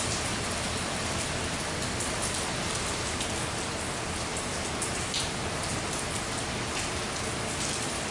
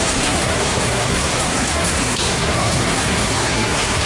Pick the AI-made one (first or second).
second